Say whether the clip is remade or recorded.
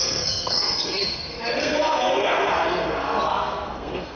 remade